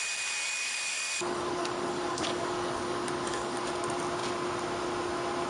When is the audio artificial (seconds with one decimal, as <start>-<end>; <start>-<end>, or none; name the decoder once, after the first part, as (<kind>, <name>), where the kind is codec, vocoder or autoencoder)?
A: 0.4-3.7 (codec, DAC)